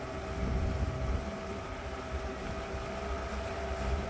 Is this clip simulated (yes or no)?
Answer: yes